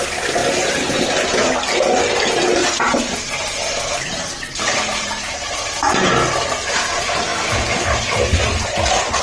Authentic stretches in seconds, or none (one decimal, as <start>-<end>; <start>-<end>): 0.0-0.4; 1.0-2.6; 6.1-7.3; 8.4-9.2